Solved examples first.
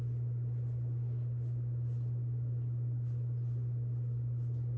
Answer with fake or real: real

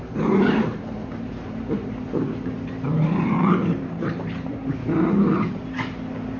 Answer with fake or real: fake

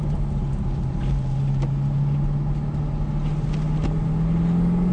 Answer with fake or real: real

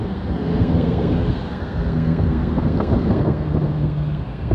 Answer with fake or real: fake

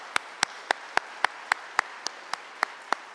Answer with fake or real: fake